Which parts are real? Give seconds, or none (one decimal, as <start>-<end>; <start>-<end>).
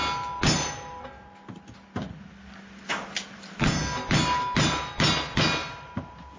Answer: 0.0-5.6